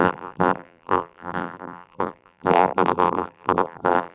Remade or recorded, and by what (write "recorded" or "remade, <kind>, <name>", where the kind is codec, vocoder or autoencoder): remade, vocoder, BigVGAN v2